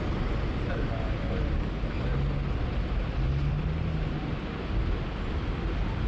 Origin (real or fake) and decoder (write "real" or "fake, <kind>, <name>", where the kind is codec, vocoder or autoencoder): real